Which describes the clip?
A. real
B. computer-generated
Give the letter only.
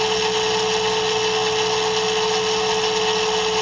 A